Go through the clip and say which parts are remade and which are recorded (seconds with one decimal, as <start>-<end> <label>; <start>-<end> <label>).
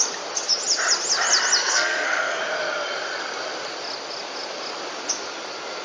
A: 0.0-1.6 recorded; 1.6-2.4 remade; 2.4-5.8 recorded